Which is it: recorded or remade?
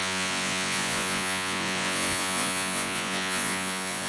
remade